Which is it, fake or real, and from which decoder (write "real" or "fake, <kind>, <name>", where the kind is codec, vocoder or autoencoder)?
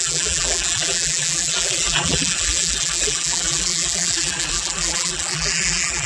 fake, vocoder, BigVGAN v2